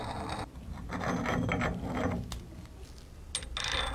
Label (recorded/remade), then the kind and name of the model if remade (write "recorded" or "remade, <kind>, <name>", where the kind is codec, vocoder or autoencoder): recorded